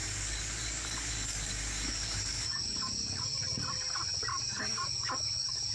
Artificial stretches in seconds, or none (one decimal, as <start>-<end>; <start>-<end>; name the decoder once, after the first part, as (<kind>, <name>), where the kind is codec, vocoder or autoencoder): 0.0-3.4 (codec, DAC); 4.3-5.7